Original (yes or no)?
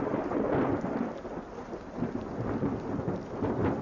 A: yes